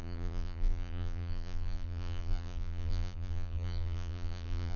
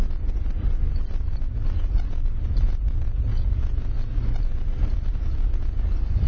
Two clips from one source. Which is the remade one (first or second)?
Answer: first